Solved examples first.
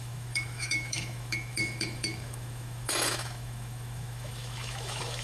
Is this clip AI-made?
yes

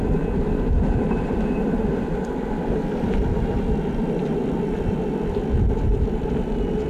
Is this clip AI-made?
no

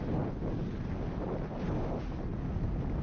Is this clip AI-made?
no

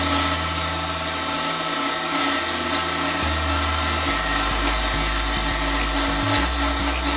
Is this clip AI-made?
no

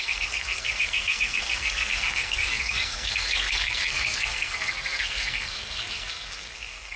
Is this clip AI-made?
yes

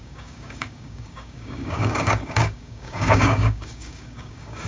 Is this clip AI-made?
yes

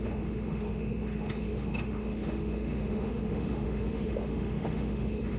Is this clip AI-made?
yes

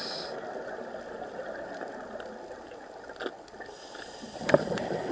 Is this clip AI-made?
no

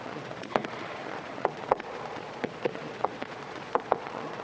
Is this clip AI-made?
yes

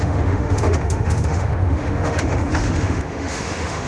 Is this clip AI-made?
yes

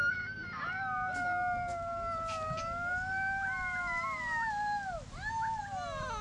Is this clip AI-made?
no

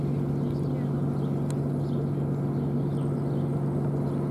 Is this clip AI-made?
no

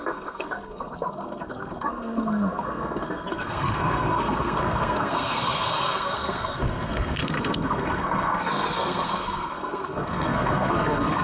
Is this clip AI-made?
yes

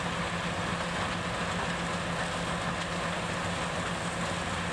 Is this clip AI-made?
no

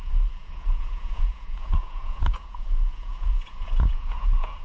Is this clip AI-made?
yes